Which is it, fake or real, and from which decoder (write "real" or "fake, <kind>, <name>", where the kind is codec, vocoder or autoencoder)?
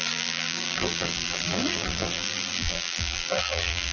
fake, vocoder, BigVGAN v2